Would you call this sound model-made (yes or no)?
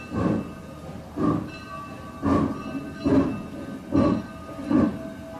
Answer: no